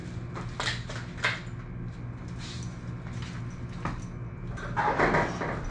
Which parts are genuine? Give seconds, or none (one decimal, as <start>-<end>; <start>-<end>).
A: 0.0-5.7